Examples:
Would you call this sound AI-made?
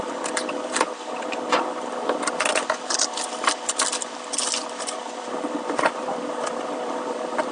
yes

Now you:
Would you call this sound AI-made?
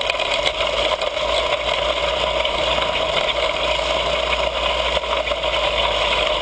no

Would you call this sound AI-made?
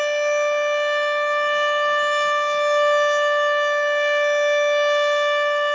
no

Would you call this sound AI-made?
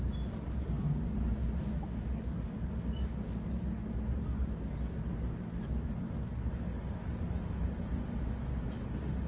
no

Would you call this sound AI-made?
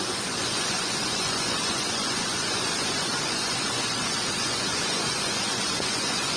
yes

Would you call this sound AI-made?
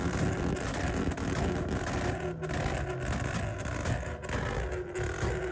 no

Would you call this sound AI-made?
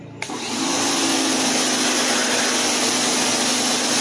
no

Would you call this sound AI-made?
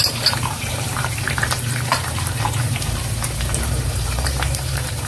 yes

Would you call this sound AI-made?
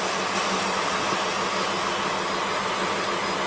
no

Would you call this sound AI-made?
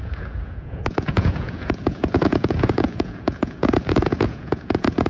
yes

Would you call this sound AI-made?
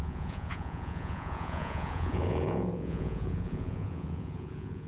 yes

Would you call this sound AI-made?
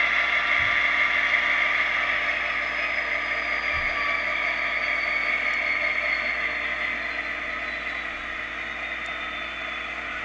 no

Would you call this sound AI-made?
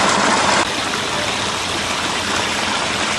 no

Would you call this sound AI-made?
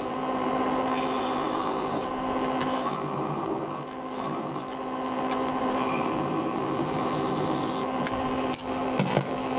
yes